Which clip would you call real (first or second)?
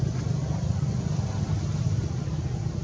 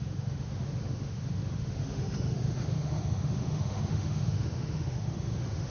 first